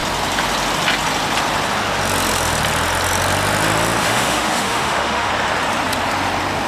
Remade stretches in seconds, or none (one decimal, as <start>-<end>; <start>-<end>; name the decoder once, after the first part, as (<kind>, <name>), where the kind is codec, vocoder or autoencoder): 4.0-5.3 (autoencoder, DAC-VAE)